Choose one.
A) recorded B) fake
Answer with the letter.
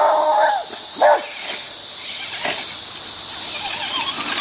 A